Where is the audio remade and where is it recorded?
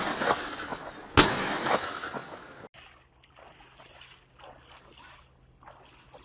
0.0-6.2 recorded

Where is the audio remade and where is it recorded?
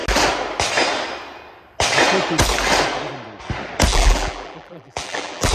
0.0-3.9 recorded; 3.9-5.5 remade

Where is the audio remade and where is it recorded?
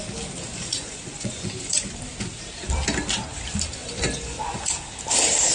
0.0-0.5 recorded; 0.5-2.0 remade; 2.0-3.8 recorded; 3.8-4.8 remade; 4.8-5.5 recorded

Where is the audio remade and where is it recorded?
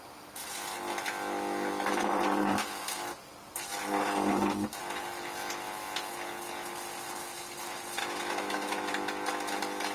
0.0-8.0 recorded; 8.0-8.9 remade; 8.9-9.9 recorded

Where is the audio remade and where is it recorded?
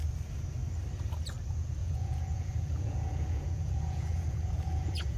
0.0-1.8 recorded; 1.8-5.2 remade